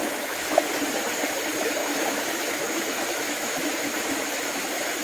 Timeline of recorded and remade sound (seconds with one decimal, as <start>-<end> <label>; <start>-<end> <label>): 0.0-0.7 remade; 0.7-1.8 recorded; 1.8-5.0 remade